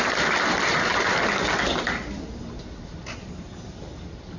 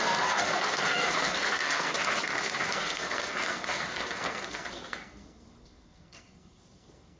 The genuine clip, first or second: first